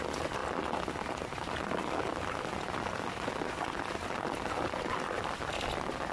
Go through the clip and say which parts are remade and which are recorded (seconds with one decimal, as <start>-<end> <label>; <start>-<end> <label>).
0.0-6.1 recorded